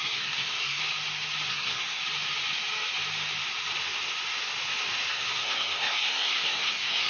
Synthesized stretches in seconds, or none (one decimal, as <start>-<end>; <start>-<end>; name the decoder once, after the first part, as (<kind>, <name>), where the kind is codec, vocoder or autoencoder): 0.0-0.8 (codec, SNAC); 1.5-2.0; 5.1-7.1